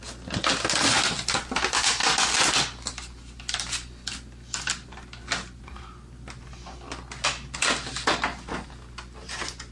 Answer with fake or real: real